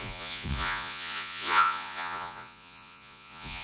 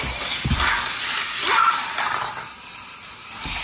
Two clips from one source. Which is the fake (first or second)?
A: first